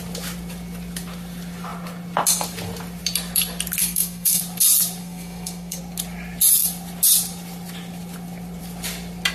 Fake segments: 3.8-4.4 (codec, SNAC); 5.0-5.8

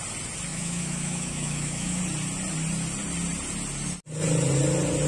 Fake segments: 0.5-2.0 (autoencoder, DAC-VAE)

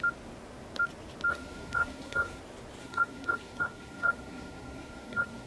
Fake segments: 1.3-2.4 (codec, SNAC); 2.8-5.5

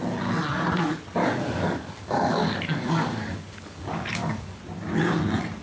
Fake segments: 1.2-4.6 (codec, DAC)

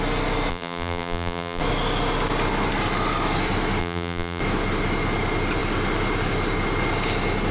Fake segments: 0.5-1.6 (vocoder, BigVGAN v2); 3.8-4.4